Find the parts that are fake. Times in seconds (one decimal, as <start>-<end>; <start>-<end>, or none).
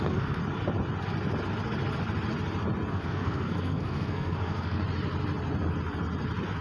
0.0-0.4; 2.9-4.8